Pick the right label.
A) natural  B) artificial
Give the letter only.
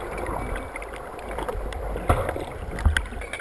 A